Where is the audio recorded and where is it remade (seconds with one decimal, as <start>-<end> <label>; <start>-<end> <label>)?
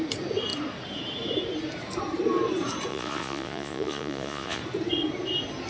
0.0-2.9 recorded; 2.9-4.6 remade; 4.6-5.7 recorded